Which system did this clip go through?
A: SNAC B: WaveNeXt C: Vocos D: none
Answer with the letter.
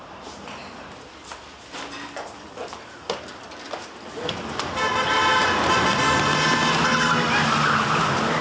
D